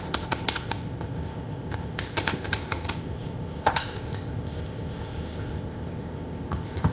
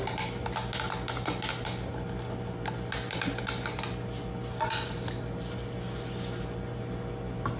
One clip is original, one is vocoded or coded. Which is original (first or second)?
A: second